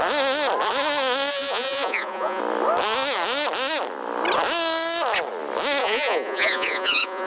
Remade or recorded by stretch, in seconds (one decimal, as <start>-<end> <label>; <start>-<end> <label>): 0.0-1.3 recorded; 1.3-2.4 remade; 2.4-5.8 recorded; 5.8-7.3 remade